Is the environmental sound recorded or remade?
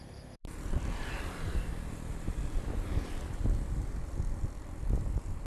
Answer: remade